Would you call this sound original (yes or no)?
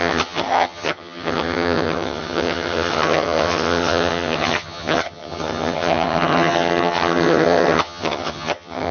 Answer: no